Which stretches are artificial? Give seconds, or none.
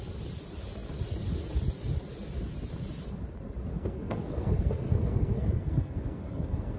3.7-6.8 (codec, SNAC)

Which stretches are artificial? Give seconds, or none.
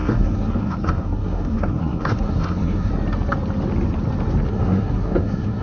0.0-2.9 (codec, SNAC); 4.5-5.6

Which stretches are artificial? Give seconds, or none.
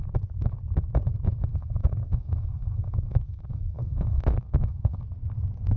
1.5-5.0 (codec, SNAC)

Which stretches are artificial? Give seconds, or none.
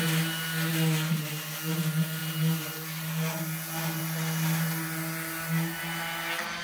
none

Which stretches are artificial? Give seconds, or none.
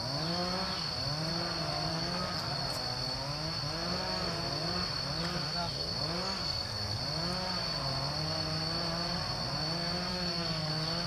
1.9-2.5 (codec, SNAC); 6.4-7.0; 10.1-10.7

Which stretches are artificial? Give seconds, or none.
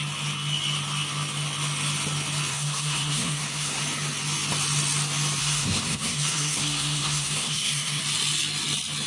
2.5-3.8 (codec, SNAC); 5.4-8.0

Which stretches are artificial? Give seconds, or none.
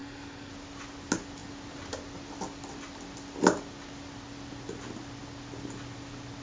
0.0-0.5 (codec, SNAC)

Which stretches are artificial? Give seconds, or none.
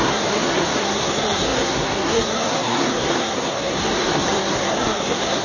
0.0-5.4 (codec, SNAC)